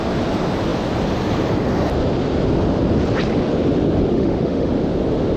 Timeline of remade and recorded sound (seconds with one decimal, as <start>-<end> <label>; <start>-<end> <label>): 0.0-4.1 recorded; 4.1-4.7 remade; 4.7-5.4 recorded